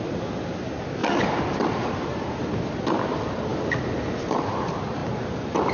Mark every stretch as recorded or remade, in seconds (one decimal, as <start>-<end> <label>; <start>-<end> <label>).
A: 0.0-5.7 recorded